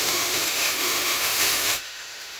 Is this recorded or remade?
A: remade